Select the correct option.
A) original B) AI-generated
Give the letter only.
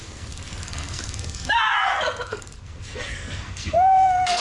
B